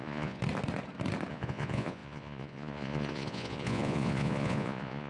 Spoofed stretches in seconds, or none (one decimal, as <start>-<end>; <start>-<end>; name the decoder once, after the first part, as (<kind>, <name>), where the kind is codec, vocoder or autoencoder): 0.0-0.4 (vocoder, Vocos); 1.3-5.1